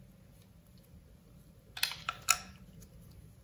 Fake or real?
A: real